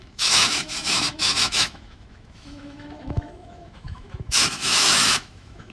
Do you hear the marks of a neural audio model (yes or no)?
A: yes